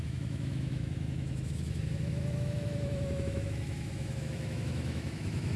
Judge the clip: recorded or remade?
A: remade